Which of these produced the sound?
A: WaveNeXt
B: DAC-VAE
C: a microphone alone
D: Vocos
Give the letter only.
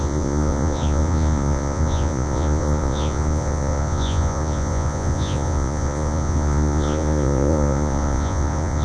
D